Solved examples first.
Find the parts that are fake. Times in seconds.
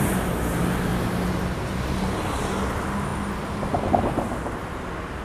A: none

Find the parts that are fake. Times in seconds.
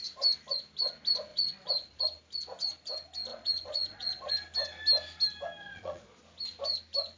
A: 1.3-2.0 (vocoder, Vocos); 3.3-4.3; 5.6-6.2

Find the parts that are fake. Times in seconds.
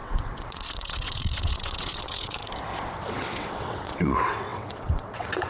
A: 0.0-2.4 (vocoder, WaveNeXt); 3.1-5.5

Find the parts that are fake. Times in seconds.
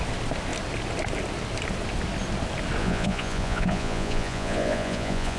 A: 2.8-5.4 (vocoder, Vocos)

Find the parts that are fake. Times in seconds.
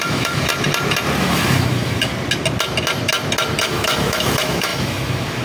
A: 0.0-0.5 (autoencoder, DAC-VAE); 1.2-2.1; 3.6-5.4